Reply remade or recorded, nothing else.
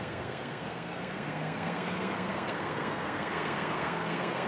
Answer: remade